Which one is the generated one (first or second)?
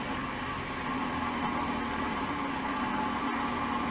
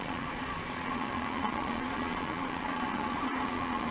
second